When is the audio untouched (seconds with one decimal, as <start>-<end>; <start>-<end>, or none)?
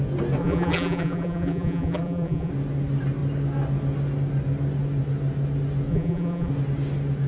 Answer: 0.0-0.4; 2.5-5.9; 6.5-7.3